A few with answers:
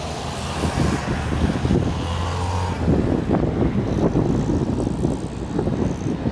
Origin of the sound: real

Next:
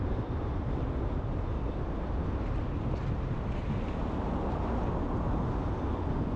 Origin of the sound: real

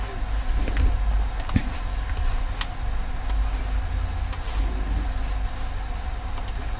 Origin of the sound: real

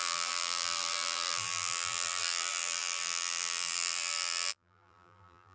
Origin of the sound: fake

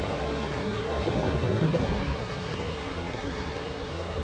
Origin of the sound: fake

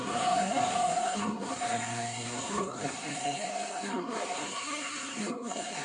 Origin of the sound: fake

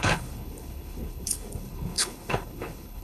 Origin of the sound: fake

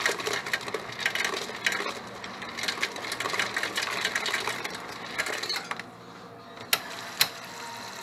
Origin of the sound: real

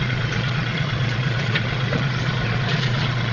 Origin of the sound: fake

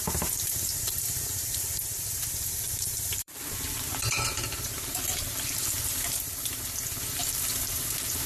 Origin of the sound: fake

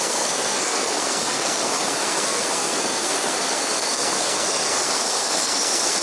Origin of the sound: fake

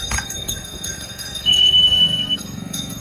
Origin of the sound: fake